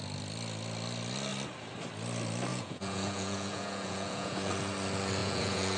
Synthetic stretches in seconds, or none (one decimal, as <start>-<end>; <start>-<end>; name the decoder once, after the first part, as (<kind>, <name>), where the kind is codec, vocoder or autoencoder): 2.5-4.5 (vocoder, Vocos); 5.2-5.8